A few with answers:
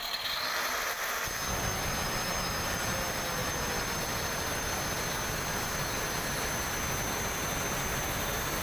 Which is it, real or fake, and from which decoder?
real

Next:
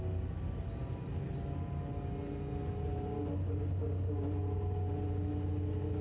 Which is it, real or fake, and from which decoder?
real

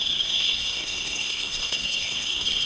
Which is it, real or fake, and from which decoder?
fake, codec, SNAC